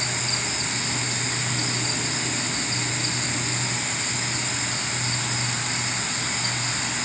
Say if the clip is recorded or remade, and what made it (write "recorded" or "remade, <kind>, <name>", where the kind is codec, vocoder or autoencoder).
recorded